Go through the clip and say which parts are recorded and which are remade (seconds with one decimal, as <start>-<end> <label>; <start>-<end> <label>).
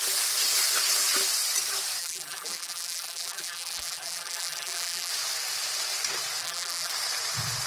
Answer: 0.0-2.0 recorded; 2.0-5.1 remade; 5.1-6.4 recorded; 6.4-6.9 remade; 6.9-7.7 recorded